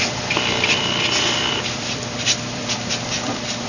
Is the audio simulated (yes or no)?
yes